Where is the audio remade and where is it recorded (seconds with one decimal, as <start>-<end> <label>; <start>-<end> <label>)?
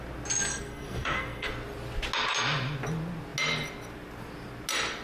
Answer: 0.0-0.5 recorded; 0.5-1.5 remade; 1.5-5.0 recorded